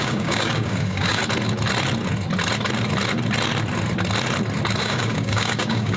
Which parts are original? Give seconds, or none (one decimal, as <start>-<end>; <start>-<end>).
1.2-4.8